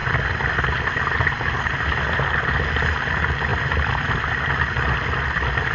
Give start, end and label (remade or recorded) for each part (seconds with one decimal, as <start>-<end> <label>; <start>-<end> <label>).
0.0-5.7 recorded